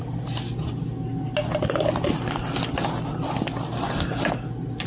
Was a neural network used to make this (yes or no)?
no